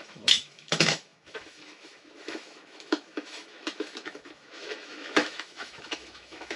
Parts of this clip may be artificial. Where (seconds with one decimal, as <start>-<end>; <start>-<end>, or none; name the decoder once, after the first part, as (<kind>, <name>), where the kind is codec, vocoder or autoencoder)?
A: 0.0-6.6 (autoencoder, DAC-VAE)